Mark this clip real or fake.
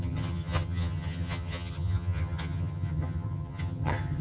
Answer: fake